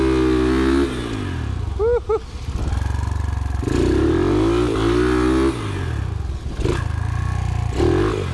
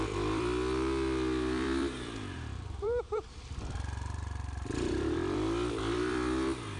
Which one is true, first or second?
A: first